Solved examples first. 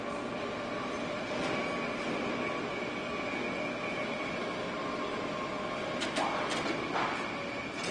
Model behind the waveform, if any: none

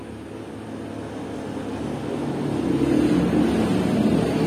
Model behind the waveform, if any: none